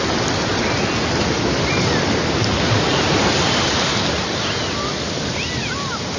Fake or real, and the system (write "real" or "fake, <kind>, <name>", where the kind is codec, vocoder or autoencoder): real